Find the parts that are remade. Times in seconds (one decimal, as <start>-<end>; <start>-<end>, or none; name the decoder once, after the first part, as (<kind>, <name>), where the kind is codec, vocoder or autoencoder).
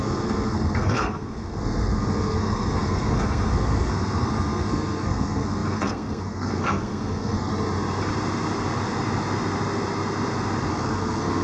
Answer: 0.0-7.5 (codec, SNAC); 10.7-11.4